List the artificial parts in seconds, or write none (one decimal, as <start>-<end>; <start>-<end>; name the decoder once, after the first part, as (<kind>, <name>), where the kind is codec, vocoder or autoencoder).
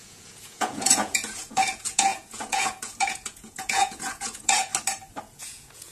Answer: 0.0-4.7 (vocoder, Vocos); 5.2-5.9